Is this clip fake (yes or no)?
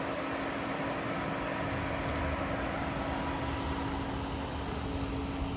no